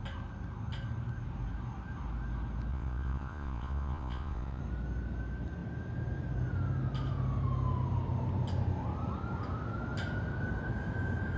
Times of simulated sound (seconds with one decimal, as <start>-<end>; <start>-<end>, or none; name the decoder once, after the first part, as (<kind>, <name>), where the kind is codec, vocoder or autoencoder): 2.7-4.6 (vocoder, Vocos)